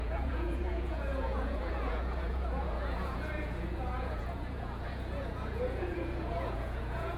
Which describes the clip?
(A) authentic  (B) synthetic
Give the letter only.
B